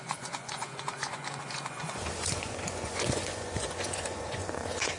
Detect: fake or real fake